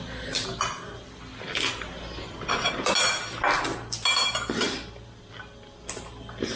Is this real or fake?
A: real